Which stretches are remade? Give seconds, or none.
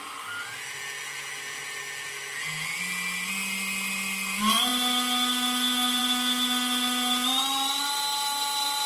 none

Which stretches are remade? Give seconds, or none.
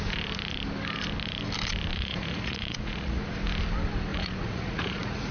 1.9-3.2 (vocoder, Vocos); 4.1-5.3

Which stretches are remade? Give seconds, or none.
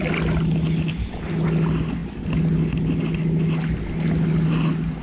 none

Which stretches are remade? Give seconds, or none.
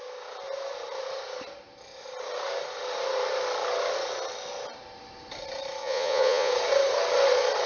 5.8-6.5 (vocoder, Vocos)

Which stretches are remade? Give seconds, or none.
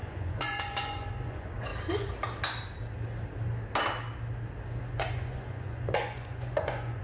0.0-1.7 (vocoder, Vocos); 4.8-7.0